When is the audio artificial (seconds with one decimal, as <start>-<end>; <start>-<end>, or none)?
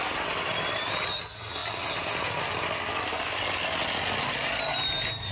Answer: none